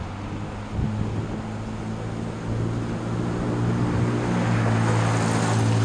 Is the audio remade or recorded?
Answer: recorded